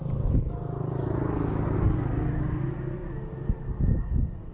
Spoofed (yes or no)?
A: no